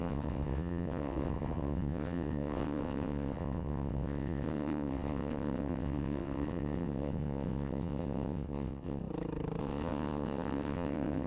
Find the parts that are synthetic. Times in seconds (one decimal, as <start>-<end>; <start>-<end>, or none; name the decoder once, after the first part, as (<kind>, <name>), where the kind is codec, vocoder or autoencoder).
0.0-9.0 (vocoder, WaveNeXt); 9.6-11.3